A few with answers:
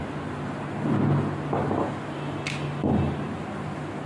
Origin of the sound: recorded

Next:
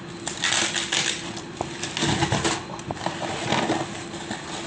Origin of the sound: recorded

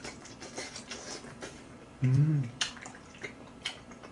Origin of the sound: remade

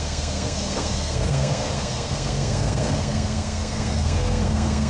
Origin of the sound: remade